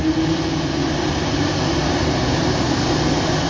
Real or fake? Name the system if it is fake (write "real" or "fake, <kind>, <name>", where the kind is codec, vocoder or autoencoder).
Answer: real